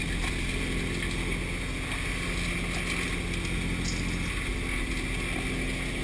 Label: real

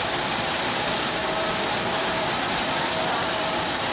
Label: fake